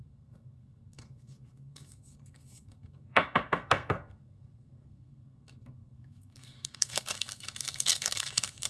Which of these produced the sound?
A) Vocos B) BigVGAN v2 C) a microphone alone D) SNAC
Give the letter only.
D